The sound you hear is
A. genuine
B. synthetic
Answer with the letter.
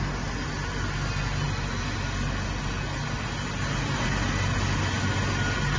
A